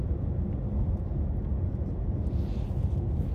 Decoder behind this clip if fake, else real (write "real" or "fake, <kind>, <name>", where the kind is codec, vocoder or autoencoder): real